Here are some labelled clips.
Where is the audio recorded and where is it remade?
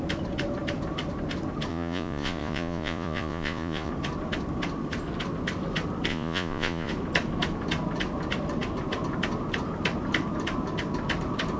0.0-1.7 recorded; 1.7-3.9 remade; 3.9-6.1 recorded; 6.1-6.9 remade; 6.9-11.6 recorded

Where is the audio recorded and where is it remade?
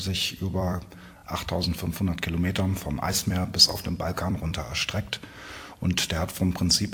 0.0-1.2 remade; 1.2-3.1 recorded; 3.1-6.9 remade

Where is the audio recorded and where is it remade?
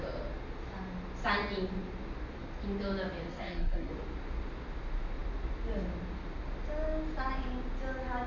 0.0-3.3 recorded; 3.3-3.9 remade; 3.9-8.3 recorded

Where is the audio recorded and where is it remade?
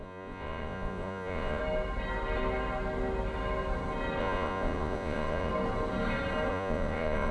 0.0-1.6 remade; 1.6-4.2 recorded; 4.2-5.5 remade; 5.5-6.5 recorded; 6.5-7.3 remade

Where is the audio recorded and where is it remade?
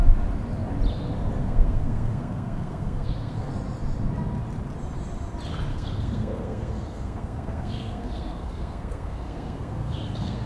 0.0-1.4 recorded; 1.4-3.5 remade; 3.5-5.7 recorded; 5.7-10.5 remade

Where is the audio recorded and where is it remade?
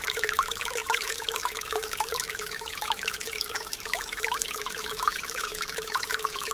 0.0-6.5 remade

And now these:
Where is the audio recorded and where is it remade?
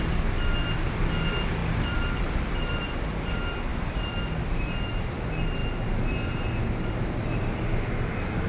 0.0-1.6 recorded; 1.6-3.3 remade; 3.3-8.5 recorded